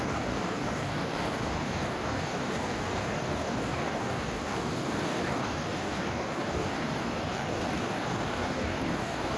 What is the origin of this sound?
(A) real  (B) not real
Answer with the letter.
B